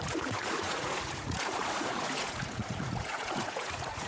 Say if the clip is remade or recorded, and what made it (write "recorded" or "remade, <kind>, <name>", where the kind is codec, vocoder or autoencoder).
remade, vocoder, Vocos